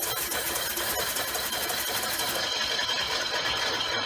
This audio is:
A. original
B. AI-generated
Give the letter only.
A